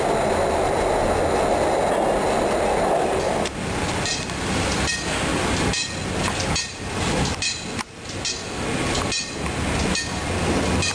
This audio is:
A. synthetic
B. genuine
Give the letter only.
B